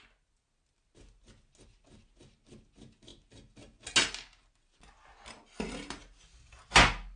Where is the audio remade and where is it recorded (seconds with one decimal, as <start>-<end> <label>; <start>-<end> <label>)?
0.0-7.2 recorded